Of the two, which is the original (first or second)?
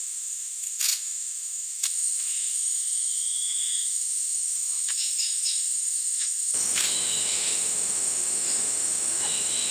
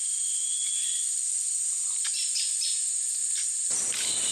second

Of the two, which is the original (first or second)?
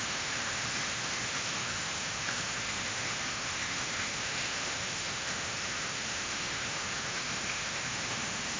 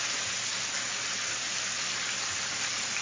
second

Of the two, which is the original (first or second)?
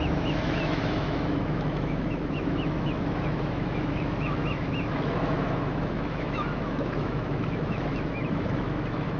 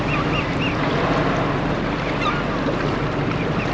second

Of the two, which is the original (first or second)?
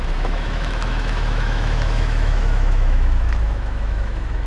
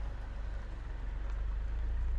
second